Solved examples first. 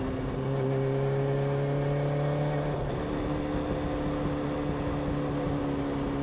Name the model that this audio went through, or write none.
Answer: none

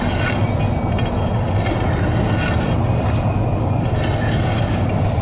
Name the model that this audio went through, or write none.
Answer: none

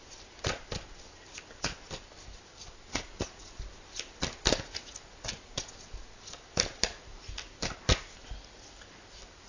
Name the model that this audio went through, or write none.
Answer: none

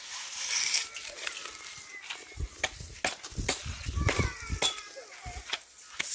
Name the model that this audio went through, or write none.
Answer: none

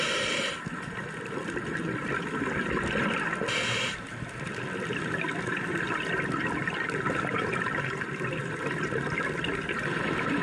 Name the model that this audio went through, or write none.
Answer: none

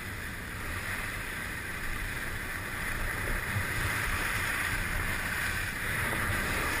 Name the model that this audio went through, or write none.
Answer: vocoder, BigVGAN v2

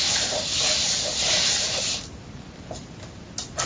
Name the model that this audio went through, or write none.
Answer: none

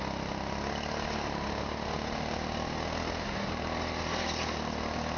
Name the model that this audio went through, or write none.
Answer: none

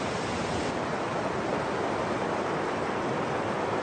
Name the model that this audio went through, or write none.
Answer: none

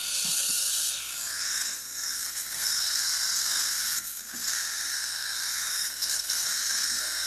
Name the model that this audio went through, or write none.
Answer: codec, SNAC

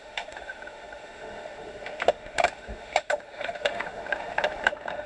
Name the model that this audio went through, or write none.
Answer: autoencoder, DAC-VAE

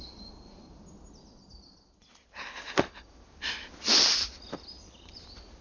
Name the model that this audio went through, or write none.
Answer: none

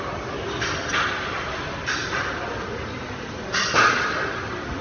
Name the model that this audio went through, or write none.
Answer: none